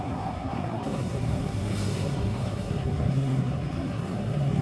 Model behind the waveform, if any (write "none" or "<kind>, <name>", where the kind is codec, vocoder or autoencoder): codec, SNAC